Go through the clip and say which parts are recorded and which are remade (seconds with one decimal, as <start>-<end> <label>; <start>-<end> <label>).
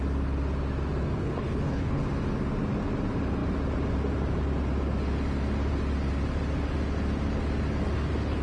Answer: 0.0-1.2 recorded; 1.2-2.0 remade; 2.0-8.4 recorded